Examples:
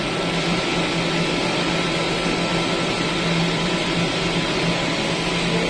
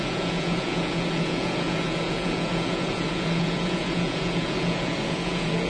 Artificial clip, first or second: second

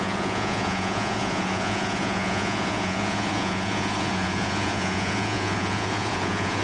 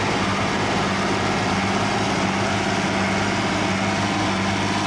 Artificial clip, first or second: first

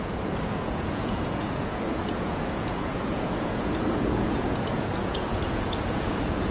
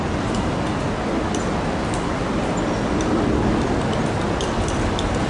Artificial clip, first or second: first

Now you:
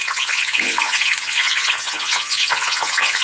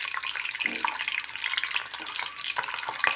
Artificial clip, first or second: first